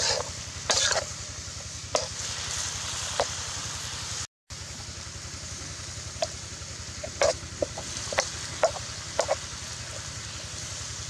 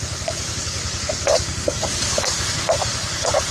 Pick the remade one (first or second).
second